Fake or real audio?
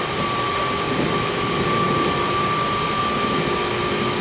real